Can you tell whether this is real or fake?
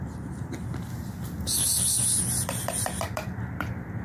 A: real